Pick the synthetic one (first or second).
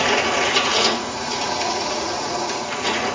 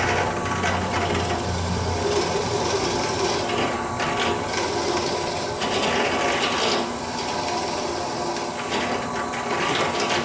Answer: first